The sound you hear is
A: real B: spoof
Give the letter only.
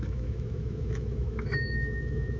B